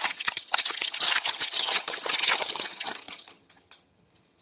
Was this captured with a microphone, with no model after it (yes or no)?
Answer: no